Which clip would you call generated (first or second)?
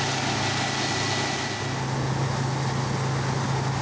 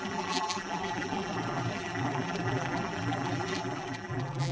second